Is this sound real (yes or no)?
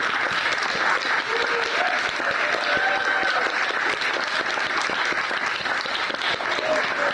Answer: yes